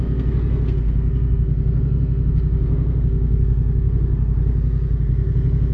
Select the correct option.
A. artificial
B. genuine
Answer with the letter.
A